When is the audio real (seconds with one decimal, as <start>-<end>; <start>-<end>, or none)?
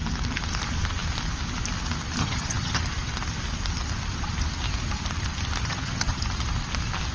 0.0-2.2; 2.8-5.6; 6.2-7.1